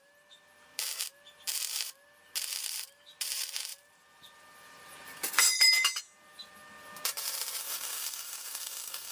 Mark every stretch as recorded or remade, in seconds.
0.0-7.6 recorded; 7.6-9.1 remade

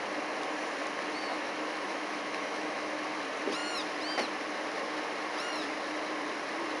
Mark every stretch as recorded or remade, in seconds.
0.0-1.3 recorded; 1.3-2.9 remade; 2.9-6.8 recorded

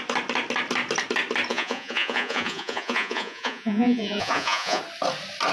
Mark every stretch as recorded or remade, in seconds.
0.0-1.5 recorded; 1.5-4.8 remade; 4.8-5.5 recorded

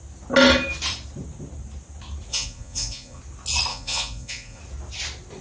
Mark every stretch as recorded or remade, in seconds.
0.0-2.3 recorded; 2.3-3.2 remade; 3.2-3.7 recorded; 3.7-4.6 remade; 4.6-5.4 recorded

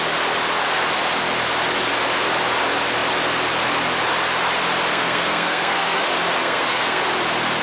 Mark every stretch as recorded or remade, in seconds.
0.0-4.9 recorded; 4.9-6.0 remade; 6.0-6.4 recorded; 6.4-7.0 remade; 7.0-7.6 recorded